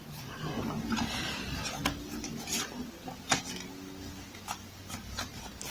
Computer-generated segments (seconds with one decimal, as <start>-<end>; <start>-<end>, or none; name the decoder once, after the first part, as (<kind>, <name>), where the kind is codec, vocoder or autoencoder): none